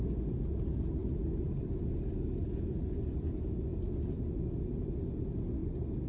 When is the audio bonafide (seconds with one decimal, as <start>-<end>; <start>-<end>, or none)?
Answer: 0.0-6.1